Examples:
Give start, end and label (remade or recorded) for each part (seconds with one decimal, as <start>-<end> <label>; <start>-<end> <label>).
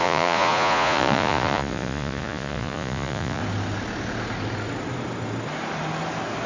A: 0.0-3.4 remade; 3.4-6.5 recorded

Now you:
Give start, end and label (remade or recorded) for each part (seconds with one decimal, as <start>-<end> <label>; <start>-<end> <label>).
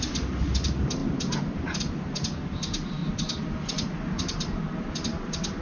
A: 0.0-5.6 recorded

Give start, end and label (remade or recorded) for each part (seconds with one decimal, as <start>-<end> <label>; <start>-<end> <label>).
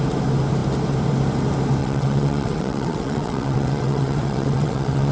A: 0.0-1.8 recorded; 1.8-5.1 remade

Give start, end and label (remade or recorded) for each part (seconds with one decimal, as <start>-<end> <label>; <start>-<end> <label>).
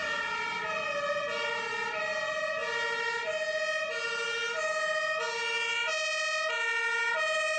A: 0.0-7.6 recorded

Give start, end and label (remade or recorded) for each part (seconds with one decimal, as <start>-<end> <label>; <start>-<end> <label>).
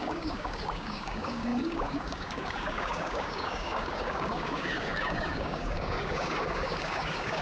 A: 0.0-7.4 remade